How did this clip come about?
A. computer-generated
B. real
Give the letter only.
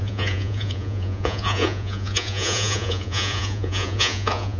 A